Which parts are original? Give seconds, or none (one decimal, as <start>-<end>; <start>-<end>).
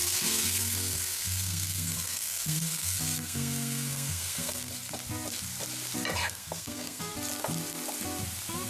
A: 4.7-6.2; 7.1-8.7